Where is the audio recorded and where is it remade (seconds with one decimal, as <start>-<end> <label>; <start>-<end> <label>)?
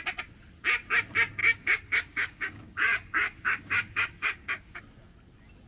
0.0-1.4 recorded; 1.4-4.8 remade; 4.8-5.7 recorded